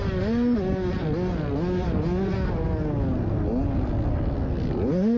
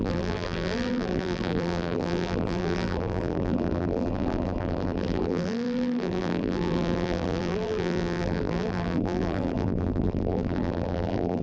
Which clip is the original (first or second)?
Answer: first